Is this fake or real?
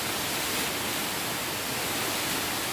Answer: real